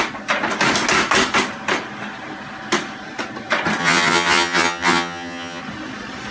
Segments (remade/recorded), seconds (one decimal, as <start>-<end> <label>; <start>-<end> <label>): 0.0-3.8 recorded; 3.8-5.6 remade; 5.6-6.3 recorded

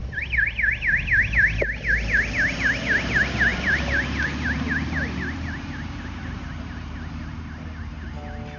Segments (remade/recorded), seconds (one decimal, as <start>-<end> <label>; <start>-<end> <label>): 0.0-3.5 recorded; 3.5-7.1 remade; 7.1-8.6 recorded

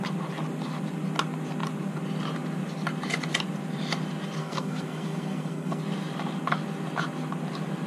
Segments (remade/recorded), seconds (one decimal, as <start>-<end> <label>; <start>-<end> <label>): 0.0-4.4 recorded; 4.4-5.8 remade; 5.8-7.9 recorded

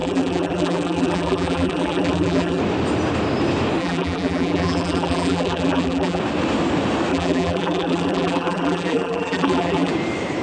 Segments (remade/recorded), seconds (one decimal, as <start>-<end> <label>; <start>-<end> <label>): 0.0-2.6 remade; 2.6-3.8 recorded; 3.8-6.2 remade; 6.2-7.1 recorded; 7.1-9.9 remade; 9.9-10.4 recorded